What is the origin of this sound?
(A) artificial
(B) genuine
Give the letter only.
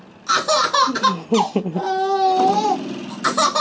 B